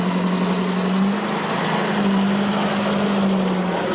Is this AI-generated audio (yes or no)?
no